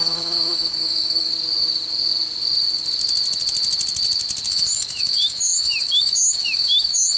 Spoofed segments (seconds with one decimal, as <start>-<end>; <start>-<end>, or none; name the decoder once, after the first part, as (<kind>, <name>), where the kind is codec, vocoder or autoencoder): 0.0-1.3 (autoencoder, DAC-VAE); 4.5-7.2